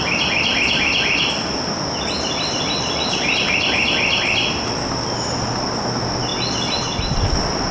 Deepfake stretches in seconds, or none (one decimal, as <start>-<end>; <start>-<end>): none